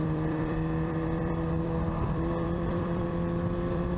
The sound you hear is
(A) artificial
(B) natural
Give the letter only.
A